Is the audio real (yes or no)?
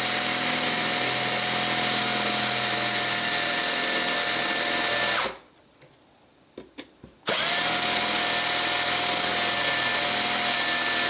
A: yes